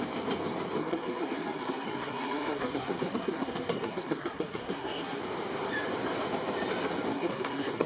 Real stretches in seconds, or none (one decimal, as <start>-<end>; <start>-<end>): 0.0-0.8; 5.2-7.1